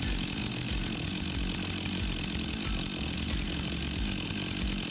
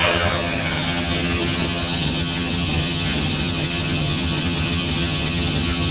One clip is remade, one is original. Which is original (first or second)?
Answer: first